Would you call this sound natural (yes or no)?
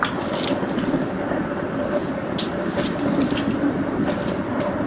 yes